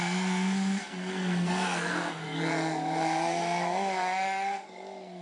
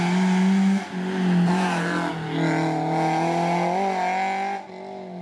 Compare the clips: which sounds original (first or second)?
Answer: second